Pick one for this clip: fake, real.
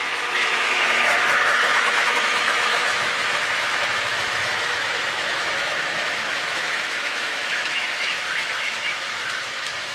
fake